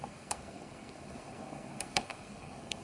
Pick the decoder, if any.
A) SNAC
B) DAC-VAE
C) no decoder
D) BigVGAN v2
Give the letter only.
A